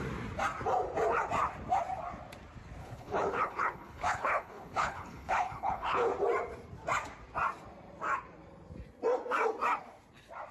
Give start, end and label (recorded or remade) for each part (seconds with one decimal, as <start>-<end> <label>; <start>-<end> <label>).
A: 0.0-2.8 recorded; 2.8-6.1 remade; 6.1-10.5 recorded